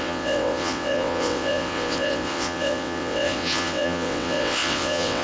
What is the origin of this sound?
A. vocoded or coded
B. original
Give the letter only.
A